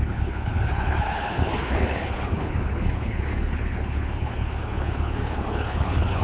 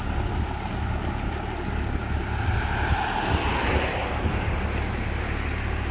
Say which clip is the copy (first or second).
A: first